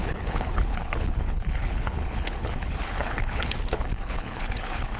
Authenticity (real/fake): fake